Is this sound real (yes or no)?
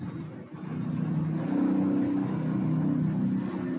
yes